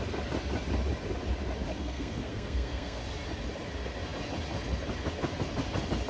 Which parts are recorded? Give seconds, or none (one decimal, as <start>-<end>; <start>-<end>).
0.0-1.7; 3.0-6.1